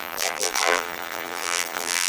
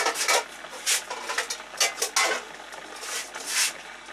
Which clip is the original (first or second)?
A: second